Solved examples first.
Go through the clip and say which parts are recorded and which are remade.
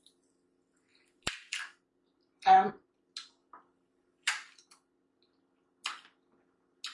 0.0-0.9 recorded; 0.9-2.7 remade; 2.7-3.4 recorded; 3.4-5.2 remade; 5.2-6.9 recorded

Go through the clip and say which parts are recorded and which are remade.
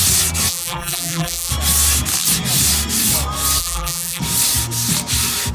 0.0-0.5 recorded; 0.5-1.5 remade; 1.5-3.6 recorded; 3.6-4.2 remade; 4.2-5.5 recorded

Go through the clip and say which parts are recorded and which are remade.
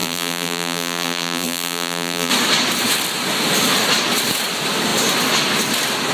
0.0-2.3 remade; 2.3-6.1 recorded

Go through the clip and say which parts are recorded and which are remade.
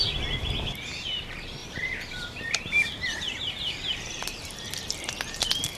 0.0-1.6 recorded; 1.6-5.1 remade; 5.1-5.8 recorded